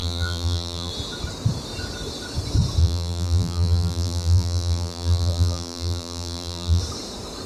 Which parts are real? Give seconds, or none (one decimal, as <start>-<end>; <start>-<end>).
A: 0.9-2.8; 6.8-7.5